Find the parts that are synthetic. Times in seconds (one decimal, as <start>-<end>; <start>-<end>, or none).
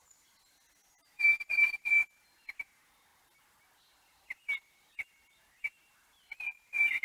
none